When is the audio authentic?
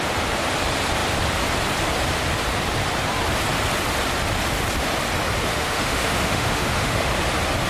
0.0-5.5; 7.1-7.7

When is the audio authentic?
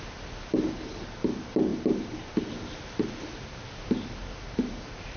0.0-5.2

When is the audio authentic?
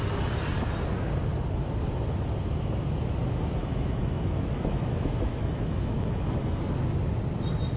0.0-3.6; 6.6-7.8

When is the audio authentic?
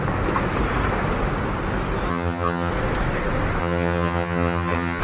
0.0-2.1; 2.7-3.6